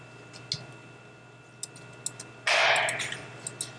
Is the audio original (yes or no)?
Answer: yes